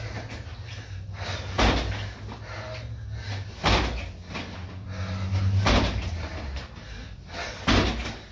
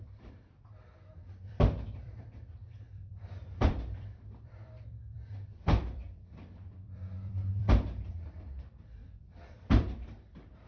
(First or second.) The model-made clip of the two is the second